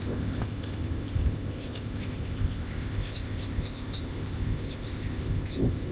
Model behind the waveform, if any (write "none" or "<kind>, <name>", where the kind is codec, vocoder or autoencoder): codec, ZipCodec